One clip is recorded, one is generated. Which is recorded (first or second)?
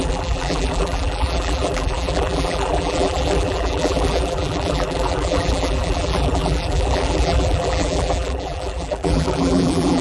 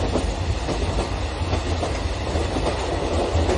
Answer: second